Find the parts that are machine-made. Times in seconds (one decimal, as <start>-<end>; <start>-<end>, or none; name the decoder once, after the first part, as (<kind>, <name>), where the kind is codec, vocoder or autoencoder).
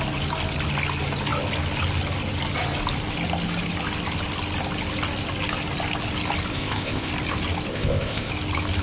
6.5-7.1 (codec, ZipCodec); 7.7-8.3